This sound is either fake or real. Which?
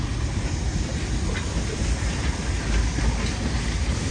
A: real